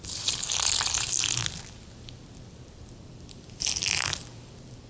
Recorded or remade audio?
remade